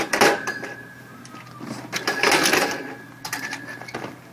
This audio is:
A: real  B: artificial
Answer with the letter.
B